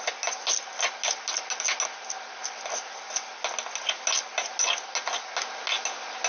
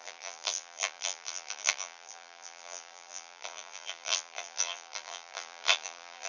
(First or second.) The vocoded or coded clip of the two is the second